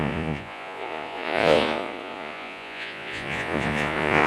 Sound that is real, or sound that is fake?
fake